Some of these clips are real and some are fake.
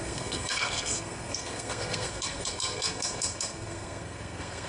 fake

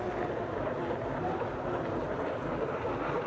real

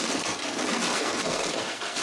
fake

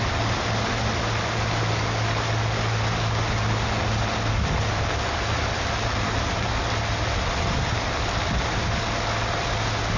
real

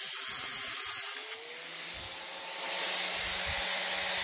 real